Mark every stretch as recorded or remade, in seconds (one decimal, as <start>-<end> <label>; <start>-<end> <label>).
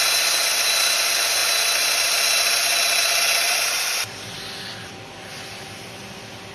0.0-6.5 remade